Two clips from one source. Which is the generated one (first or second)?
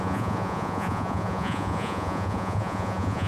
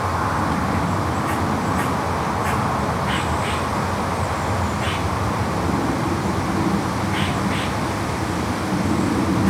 first